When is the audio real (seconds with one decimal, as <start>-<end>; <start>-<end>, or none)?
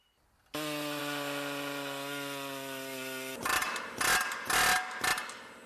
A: 0.0-5.7